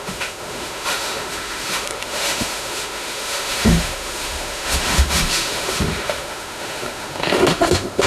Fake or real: fake